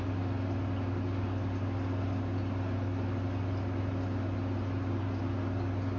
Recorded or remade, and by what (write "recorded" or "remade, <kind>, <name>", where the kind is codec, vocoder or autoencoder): recorded